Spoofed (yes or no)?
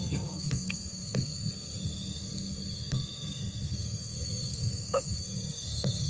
yes